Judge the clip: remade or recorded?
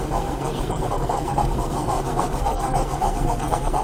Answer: remade